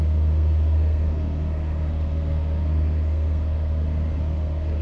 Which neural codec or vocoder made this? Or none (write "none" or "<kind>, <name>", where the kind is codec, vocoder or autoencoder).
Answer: codec, SNAC